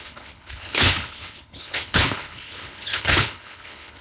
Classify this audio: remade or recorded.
remade